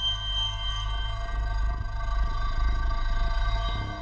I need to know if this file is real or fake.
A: real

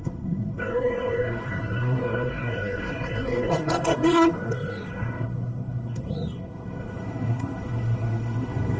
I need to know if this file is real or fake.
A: fake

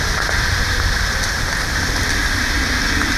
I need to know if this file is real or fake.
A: real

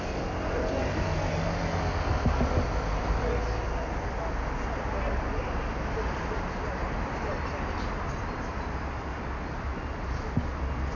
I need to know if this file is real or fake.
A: real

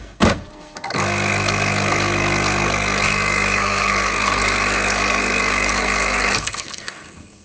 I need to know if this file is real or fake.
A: fake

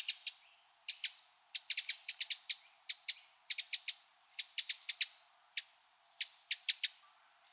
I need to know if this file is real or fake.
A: real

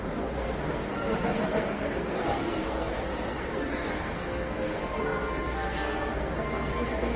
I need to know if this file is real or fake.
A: fake